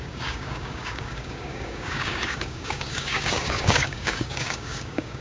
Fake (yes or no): yes